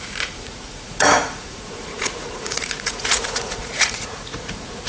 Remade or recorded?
remade